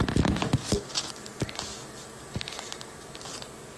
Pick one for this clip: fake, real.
real